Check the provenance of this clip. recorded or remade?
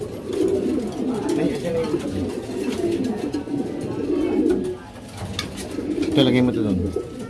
recorded